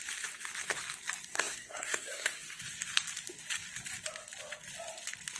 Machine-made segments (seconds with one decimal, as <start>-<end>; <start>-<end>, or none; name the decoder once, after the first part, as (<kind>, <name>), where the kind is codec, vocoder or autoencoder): 1.3-2.6 (codec, SNAC)